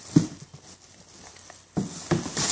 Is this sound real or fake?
real